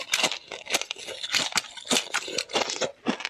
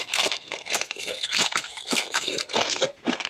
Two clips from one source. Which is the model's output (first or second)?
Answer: second